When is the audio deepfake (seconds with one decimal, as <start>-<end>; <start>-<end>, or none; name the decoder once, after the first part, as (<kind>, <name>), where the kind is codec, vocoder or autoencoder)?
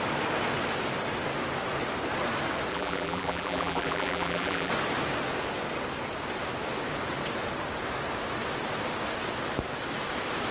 2.7-4.7 (vocoder, BigVGAN v2)